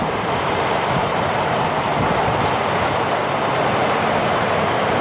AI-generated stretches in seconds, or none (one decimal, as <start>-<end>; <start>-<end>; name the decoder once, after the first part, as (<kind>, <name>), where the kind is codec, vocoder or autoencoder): 0.0-1.9 (vocoder, BigVGAN v2); 4.3-5.0